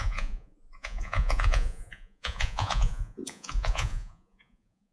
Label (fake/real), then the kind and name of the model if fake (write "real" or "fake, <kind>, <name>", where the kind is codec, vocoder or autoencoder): fake, vocoder, Vocos